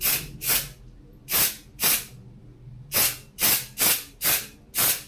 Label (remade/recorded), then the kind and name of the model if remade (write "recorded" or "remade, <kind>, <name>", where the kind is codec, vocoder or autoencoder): recorded